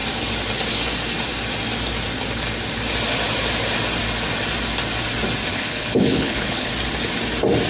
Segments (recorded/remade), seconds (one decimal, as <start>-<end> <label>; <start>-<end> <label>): 0.0-5.5 recorded; 5.5-6.7 remade; 6.7-7.7 recorded